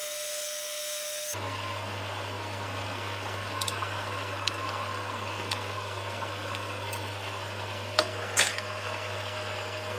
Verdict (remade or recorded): remade